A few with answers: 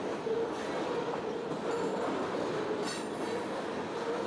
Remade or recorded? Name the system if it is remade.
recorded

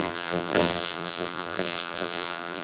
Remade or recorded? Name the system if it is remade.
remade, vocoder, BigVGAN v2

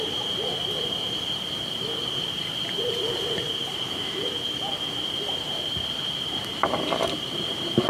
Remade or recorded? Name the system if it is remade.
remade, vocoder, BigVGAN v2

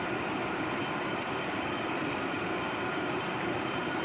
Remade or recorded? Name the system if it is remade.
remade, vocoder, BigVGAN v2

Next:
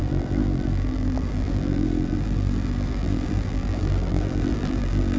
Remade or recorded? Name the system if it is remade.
remade, vocoder, BigVGAN v2